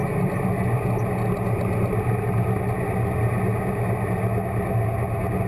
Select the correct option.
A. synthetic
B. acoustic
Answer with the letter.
B